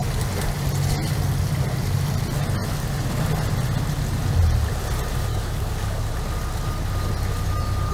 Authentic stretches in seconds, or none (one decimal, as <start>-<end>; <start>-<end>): 0.0-5.3; 6.1-7.9